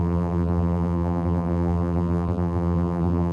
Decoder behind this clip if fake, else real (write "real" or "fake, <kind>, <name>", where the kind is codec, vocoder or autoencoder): fake, vocoder, BigVGAN v2